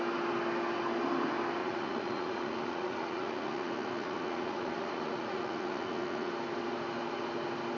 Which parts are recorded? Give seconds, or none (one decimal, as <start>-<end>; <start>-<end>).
0.0-1.6; 6.3-7.8